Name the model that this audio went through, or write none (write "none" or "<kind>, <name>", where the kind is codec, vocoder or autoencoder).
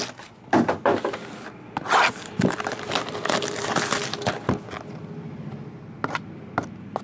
none